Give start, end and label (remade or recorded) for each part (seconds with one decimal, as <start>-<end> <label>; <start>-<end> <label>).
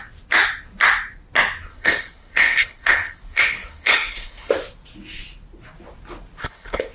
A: 0.0-1.7 recorded; 1.7-4.5 remade; 4.5-6.4 recorded; 6.4-6.9 remade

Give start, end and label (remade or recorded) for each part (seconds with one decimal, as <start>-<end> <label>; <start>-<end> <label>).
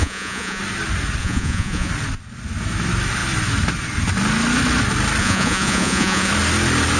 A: 0.0-0.6 remade; 0.6-1.2 recorded; 1.2-1.9 remade; 1.9-5.2 recorded; 5.2-6.3 remade; 6.3-7.0 recorded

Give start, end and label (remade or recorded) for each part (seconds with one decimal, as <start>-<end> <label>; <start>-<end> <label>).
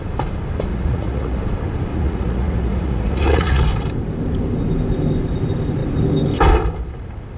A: 0.0-0.7 recorded; 0.7-1.4 remade; 1.4-1.9 recorded; 1.9-3.6 remade; 3.6-7.4 recorded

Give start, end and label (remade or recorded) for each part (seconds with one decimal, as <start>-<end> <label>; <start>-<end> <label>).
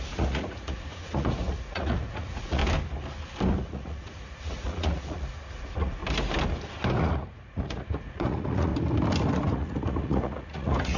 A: 0.0-2.6 remade; 2.6-3.6 recorded; 3.6-6.0 remade; 6.0-6.9 recorded; 6.9-8.7 remade; 8.7-9.5 recorded; 9.5-11.0 remade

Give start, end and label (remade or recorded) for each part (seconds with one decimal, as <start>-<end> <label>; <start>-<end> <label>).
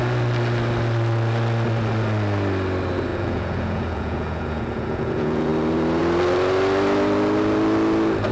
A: 0.0-3.1 recorded; 3.1-5.5 remade; 5.5-8.3 recorded